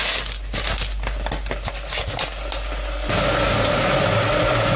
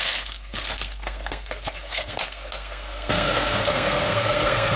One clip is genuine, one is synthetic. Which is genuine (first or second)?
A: first